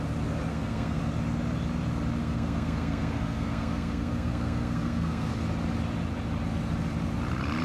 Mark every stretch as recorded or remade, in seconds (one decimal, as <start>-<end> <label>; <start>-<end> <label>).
0.0-0.5 recorded; 0.5-1.0 remade; 1.0-2.2 recorded; 2.2-5.3 remade; 5.3-7.6 recorded